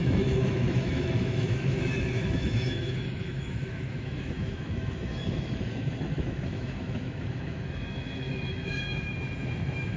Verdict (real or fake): fake